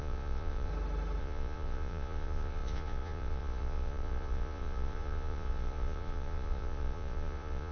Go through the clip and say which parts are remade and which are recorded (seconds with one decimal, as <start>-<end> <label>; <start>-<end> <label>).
0.0-0.7 remade; 0.7-1.2 recorded; 1.2-7.7 remade